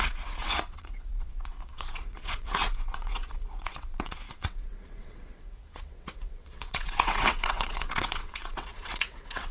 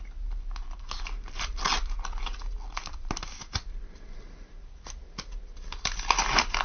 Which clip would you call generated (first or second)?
first